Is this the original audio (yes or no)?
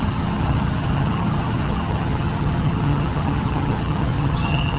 no